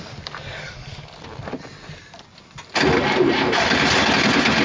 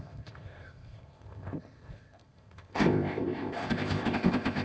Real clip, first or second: first